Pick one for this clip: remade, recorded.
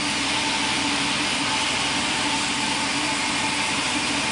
recorded